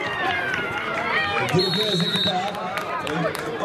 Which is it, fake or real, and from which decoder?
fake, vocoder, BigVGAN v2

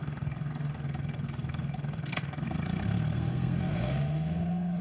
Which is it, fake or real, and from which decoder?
fake, codec, SNAC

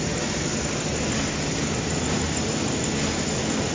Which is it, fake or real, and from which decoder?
real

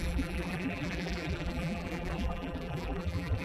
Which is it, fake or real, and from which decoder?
fake, vocoder, BigVGAN v2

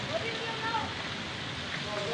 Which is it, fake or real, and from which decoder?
real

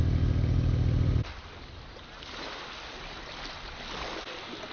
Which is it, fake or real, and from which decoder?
real